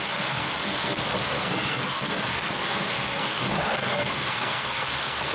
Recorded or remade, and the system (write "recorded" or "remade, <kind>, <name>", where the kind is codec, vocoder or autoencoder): remade, codec, SNAC